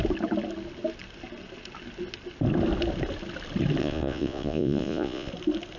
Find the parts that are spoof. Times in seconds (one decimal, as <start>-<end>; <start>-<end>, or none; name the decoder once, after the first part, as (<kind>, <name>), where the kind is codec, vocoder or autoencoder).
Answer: 3.8-5.3 (vocoder, Vocos)